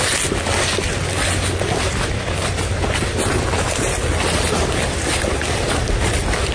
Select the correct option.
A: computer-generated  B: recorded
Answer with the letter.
B